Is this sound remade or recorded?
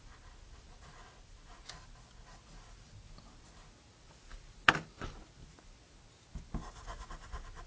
recorded